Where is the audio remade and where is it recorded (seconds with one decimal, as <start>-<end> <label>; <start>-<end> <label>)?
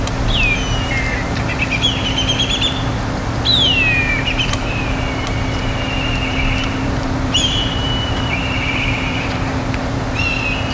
0.0-6.6 recorded; 6.6-10.1 remade; 10.1-10.7 recorded